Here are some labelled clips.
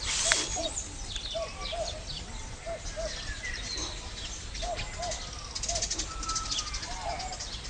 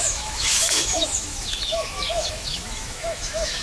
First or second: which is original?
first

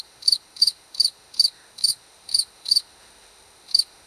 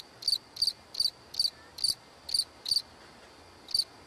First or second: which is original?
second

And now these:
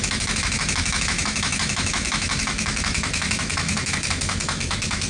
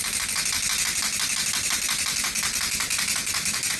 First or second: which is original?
second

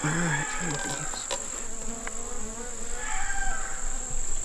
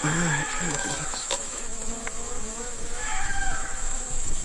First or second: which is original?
first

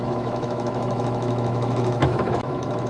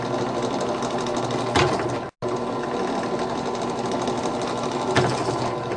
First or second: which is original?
second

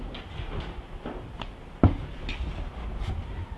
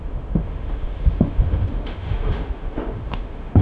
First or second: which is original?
first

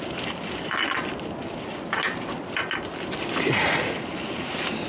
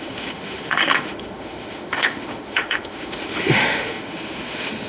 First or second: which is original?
first